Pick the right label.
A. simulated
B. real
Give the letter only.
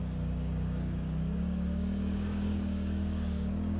A